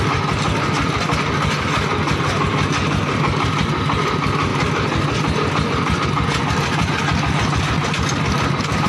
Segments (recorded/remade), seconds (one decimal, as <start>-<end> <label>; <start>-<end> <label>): 0.0-8.9 recorded